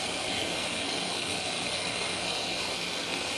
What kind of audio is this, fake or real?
fake